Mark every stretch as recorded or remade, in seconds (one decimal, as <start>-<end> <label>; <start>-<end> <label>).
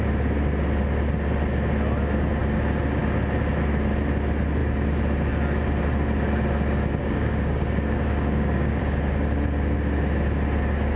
0.0-7.0 recorded; 7.0-8.8 remade; 8.8-11.0 recorded